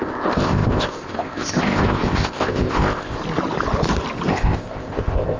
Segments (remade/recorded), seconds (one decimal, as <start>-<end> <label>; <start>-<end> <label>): 0.0-3.2 remade; 3.2-4.3 recorded; 4.3-5.4 remade